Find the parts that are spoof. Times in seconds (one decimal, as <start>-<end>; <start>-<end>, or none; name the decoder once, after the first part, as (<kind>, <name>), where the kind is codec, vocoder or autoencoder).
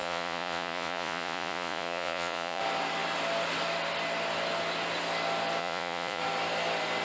0.0-2.6 (vocoder, Vocos); 5.6-6.2